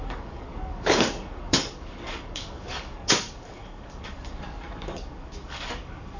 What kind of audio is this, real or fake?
fake